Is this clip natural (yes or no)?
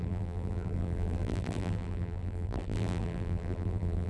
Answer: no